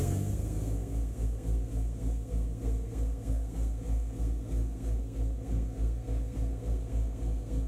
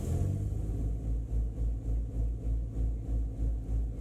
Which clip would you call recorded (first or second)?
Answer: second